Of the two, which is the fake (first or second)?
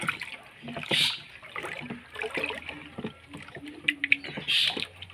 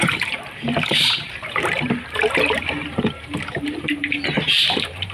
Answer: second